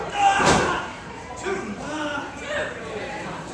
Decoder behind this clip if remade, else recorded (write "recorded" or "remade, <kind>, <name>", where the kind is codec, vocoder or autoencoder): remade, vocoder, BigVGAN v2